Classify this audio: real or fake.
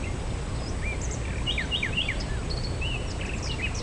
real